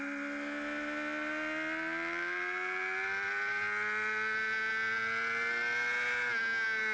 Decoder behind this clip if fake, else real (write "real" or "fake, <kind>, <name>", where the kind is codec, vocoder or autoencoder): real